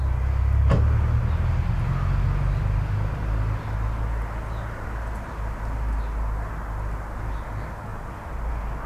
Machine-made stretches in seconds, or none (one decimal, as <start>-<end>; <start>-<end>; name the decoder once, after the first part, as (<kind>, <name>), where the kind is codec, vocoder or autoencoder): 7.9-8.5 (vocoder, BigVGAN v2)